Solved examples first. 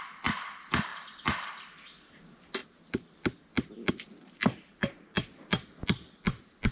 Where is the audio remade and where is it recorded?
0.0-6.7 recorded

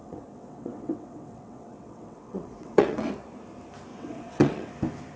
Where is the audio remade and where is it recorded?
0.0-3.1 remade; 3.1-3.9 recorded; 3.9-4.7 remade; 4.7-5.2 recorded

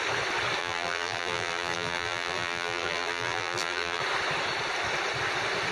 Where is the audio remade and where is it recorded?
0.0-0.6 recorded; 0.6-4.0 remade; 4.0-5.7 recorded

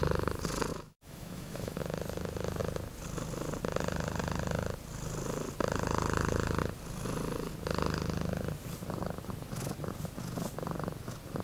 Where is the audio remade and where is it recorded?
0.0-0.7 recorded; 0.7-1.8 remade; 1.8-11.4 recorded

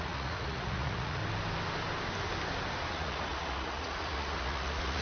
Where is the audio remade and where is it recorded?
0.0-1.2 remade; 1.2-2.9 recorded; 2.9-5.0 remade

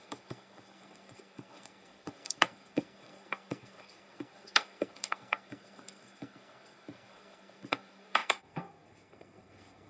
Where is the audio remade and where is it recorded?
0.0-9.9 remade

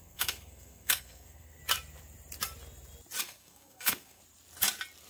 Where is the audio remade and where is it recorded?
0.0-1.6 remade; 1.6-3.2 recorded; 3.2-4.2 remade; 4.2-5.1 recorded

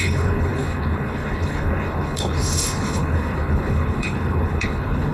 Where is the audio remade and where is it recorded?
0.0-5.1 remade